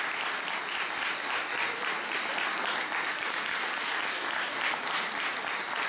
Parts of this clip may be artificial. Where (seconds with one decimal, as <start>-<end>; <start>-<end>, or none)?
3.1-5.3